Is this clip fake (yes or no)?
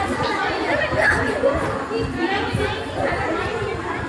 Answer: no